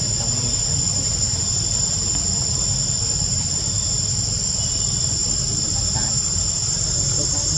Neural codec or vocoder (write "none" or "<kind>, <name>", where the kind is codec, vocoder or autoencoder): none